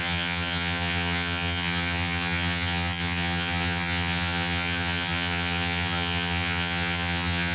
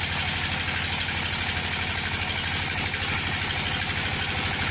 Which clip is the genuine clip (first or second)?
second